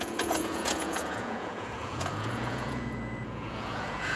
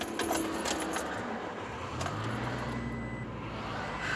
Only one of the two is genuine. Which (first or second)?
second